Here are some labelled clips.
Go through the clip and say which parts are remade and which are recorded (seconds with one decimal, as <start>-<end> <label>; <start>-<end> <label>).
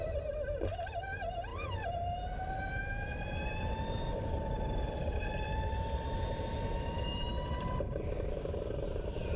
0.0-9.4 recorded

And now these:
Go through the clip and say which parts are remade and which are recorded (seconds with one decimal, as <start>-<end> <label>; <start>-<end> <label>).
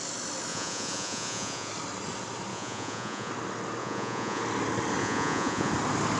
0.0-0.5 recorded; 0.5-1.7 remade; 1.7-2.5 recorded; 2.5-3.3 remade; 3.3-3.8 recorded; 3.8-4.4 remade; 4.4-5.0 recorded; 5.0-5.7 remade; 5.7-6.2 recorded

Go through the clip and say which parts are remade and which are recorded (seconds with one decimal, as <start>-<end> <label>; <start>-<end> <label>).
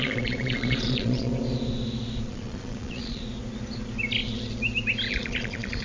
0.0-1.3 remade; 1.3-2.3 recorded; 2.3-3.2 remade; 3.2-5.1 recorded; 5.1-5.8 remade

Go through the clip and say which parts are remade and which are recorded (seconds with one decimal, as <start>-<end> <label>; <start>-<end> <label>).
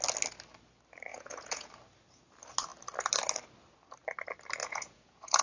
0.0-1.1 recorded; 1.1-1.7 remade; 1.7-4.6 recorded; 4.6-5.4 remade